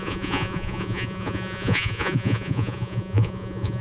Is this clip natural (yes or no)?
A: no